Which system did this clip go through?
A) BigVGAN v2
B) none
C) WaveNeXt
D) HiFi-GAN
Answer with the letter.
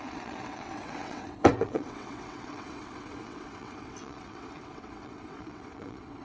C